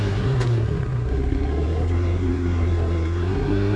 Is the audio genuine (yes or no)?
no